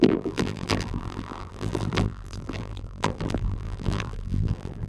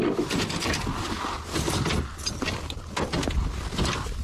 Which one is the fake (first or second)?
first